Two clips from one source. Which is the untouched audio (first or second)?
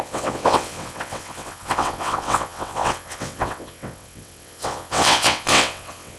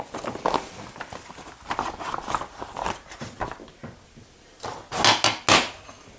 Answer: second